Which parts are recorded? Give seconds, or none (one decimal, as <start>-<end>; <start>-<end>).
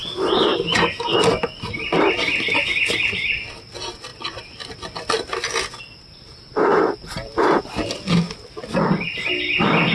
0.0-6.7; 8.1-9.9